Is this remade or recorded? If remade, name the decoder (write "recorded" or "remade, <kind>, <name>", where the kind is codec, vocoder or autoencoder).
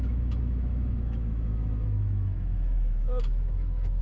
remade, autoencoder, DAC-VAE